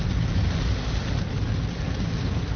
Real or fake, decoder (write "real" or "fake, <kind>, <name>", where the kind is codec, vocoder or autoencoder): real